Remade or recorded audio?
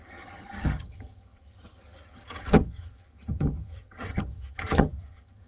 remade